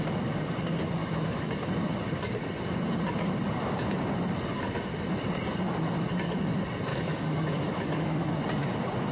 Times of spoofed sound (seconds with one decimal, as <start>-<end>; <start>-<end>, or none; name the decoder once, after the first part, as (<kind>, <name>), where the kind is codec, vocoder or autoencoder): 1.0-1.5 (autoencoder, DAC-VAE); 6.9-8.3